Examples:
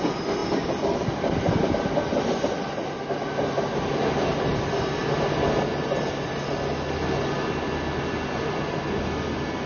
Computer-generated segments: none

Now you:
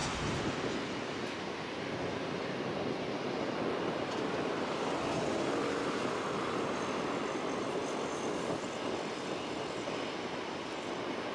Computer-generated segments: none

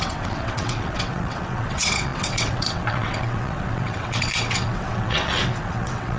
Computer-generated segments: 0.0-6.2 (vocoder, WaveNeXt)

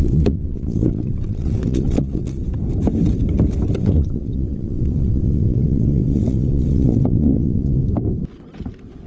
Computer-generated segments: 0.0-2.4 (vocoder, WaveNeXt); 3.8-7.8

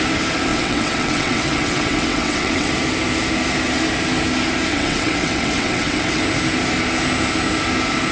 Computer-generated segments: 0.5-2.7 (vocoder, WaveNeXt); 4.7-6.2